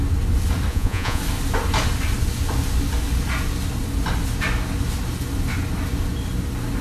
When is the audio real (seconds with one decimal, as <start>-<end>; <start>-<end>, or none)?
0.0-0.7; 1.2-6.8